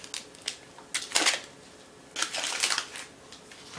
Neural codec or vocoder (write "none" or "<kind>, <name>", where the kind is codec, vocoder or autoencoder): none